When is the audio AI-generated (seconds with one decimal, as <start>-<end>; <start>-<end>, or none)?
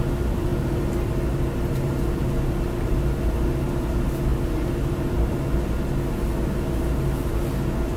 none